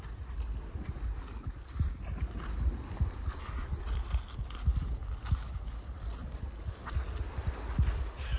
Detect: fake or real real